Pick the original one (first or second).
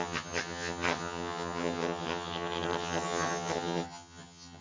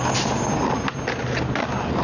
second